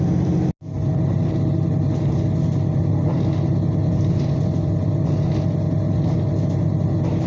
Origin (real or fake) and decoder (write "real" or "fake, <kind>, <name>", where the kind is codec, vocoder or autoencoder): real